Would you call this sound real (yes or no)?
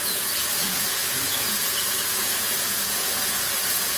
no